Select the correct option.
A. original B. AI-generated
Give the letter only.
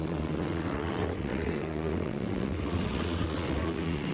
B